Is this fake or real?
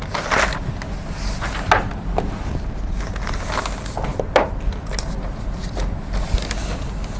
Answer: real